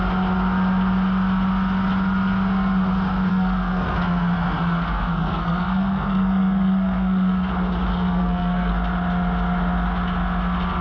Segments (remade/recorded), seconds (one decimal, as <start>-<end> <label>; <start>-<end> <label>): 0.0-3.3 recorded; 3.3-7.5 remade; 7.5-7.9 recorded; 7.9-8.7 remade; 8.7-10.8 recorded